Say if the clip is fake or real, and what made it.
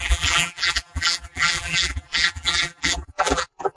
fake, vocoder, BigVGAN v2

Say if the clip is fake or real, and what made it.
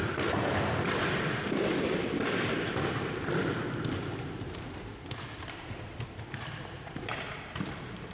fake, vocoder, BigVGAN v2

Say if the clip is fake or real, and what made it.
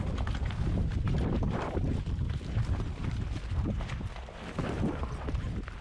real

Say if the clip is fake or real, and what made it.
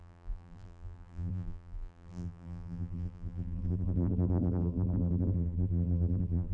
fake, vocoder, BigVGAN v2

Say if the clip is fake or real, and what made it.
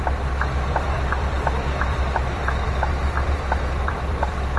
fake, vocoder, BigVGAN v2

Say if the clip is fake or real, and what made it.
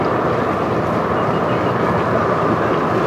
real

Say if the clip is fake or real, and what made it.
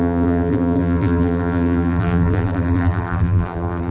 fake, vocoder, BigVGAN v2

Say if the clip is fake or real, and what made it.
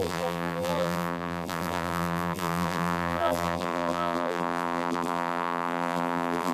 fake, vocoder, BigVGAN v2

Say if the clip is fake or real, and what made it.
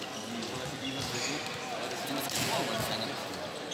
real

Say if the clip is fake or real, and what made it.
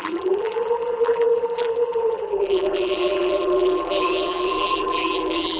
fake, vocoder, BigVGAN v2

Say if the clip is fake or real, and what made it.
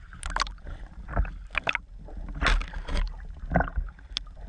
real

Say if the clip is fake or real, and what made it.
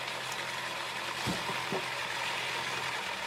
real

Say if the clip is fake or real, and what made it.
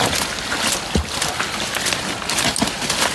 real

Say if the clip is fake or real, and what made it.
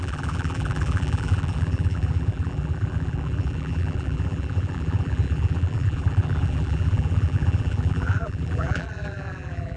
fake, vocoder, BigVGAN v2